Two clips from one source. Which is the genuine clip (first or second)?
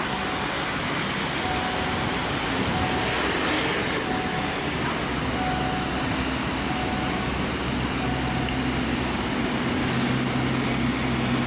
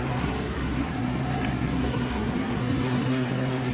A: first